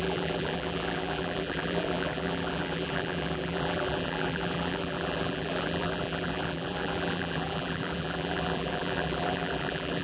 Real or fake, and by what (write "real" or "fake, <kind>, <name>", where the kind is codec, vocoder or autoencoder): fake, vocoder, BigVGAN v2